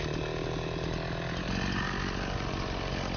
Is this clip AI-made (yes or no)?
no